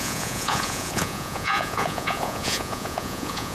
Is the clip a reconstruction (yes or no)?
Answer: yes